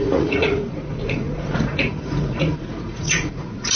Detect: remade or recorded remade